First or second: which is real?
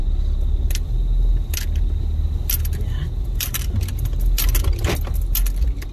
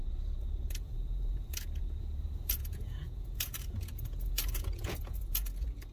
first